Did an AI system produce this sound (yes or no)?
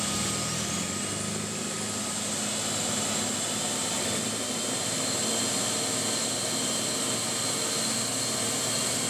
no